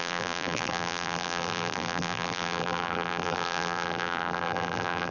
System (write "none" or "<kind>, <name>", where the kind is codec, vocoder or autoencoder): vocoder, BigVGAN v2